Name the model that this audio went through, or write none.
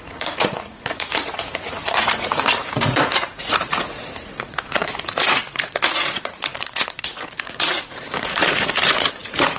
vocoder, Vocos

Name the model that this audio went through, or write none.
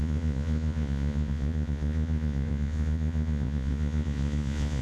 vocoder, Vocos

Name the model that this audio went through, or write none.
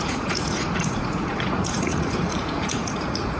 vocoder, Vocos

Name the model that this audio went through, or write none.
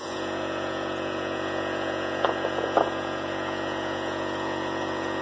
vocoder, Vocos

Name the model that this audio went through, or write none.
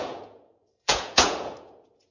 vocoder, Vocos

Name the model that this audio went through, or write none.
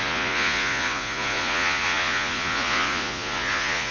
vocoder, Vocos